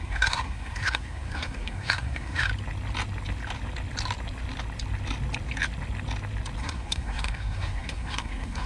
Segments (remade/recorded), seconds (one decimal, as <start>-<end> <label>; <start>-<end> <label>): 0.0-2.5 remade; 2.5-6.6 recorded; 6.6-8.7 remade